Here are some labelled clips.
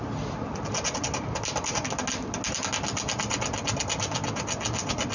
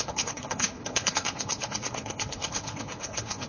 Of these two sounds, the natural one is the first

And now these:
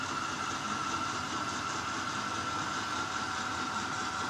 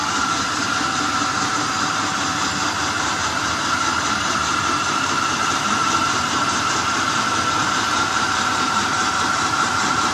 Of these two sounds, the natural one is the first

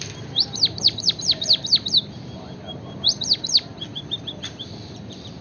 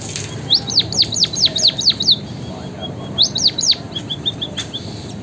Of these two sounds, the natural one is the second